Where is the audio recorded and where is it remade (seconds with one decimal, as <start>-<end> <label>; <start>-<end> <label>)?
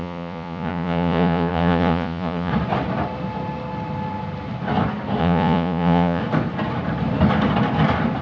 0.0-2.5 remade; 2.5-5.2 recorded; 5.2-6.2 remade; 6.2-8.2 recorded